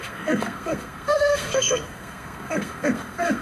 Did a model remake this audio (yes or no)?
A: yes